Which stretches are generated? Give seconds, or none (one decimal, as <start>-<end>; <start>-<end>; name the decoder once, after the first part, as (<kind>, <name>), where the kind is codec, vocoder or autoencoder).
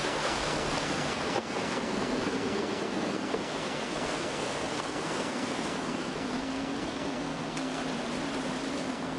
0.0-7.8 (codec, SNAC); 8.7-9.2